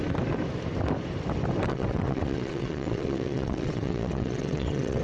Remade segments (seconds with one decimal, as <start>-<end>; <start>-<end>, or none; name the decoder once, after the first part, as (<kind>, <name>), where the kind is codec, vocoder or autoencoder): 1.7-5.0 (vocoder, WaveNeXt)